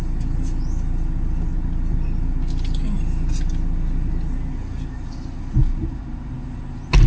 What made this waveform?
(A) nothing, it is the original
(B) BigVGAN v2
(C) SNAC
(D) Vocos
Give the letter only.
A